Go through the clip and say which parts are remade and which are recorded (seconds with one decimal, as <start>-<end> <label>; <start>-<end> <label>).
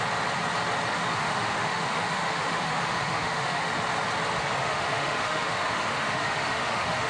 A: 0.0-0.9 recorded; 0.9-3.7 remade; 3.7-4.6 recorded; 4.6-7.1 remade